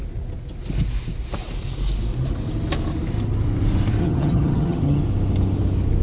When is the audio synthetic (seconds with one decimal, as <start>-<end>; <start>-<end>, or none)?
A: 4.0-5.0